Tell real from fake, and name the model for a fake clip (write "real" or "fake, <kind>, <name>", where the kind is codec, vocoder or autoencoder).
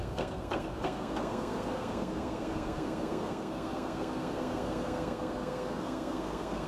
fake, codec, SNAC